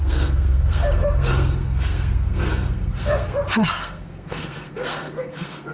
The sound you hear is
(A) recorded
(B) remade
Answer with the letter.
B